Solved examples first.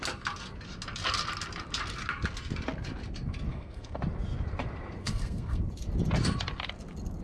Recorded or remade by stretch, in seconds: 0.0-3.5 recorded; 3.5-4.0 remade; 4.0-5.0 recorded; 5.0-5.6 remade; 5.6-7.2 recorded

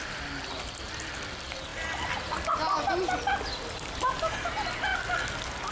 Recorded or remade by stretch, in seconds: 0.0-5.7 recorded

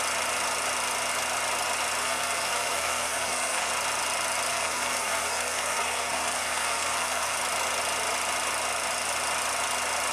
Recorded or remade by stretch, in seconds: 0.0-2.0 recorded; 2.0-3.7 remade; 3.7-4.5 recorded; 4.5-7.4 remade; 7.4-10.1 recorded

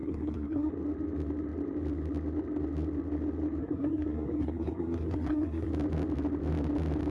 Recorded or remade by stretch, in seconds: 0.0-0.7 remade; 0.7-3.6 recorded; 3.6-5.7 remade; 5.7-7.1 recorded